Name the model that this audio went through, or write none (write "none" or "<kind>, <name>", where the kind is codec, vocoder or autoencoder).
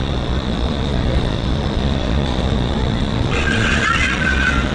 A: vocoder, Vocos